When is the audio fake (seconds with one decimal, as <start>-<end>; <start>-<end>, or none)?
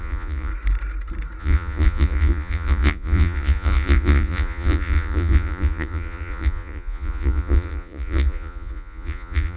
0.0-0.5; 1.4-9.6